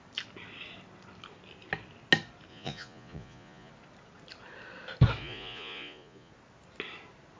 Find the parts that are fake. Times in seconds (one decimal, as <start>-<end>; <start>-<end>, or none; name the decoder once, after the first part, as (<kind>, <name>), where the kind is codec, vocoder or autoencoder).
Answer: 2.5-3.7 (vocoder, Vocos); 5.2-6.3